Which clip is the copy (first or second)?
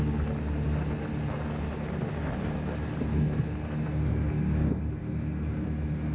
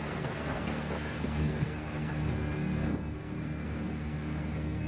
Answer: second